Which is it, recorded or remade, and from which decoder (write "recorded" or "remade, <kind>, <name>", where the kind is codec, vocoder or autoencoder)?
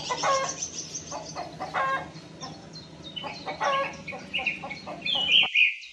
recorded